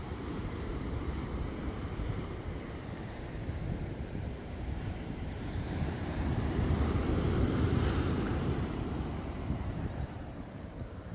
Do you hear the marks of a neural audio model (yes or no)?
yes